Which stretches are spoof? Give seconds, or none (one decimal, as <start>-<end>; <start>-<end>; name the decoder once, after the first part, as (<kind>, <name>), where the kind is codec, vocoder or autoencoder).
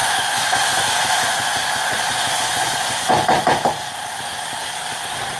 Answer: 0.0-3.1 (vocoder, Vocos)